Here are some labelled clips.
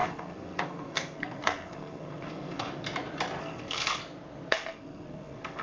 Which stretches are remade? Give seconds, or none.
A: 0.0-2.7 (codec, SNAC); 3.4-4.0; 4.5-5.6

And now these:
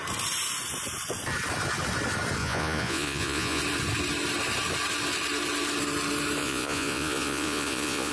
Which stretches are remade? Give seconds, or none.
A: 2.4-3.6 (vocoder, Vocos); 6.4-8.1

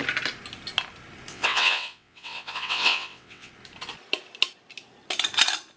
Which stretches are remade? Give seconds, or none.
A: 1.3-3.5 (vocoder, WaveNeXt)

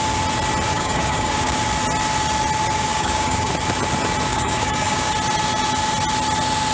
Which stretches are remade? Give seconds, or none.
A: 0.7-1.6 (codec, DAC); 2.9-3.5; 4.3-5.1

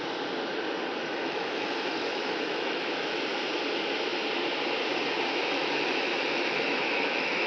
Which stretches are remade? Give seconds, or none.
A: 1.0-3.2 (autoencoder, DAC-VAE); 5.4-7.5

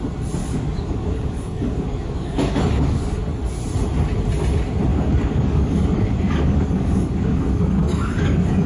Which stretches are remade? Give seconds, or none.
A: 0.4-3.2 (codec, DAC); 4.9-8.7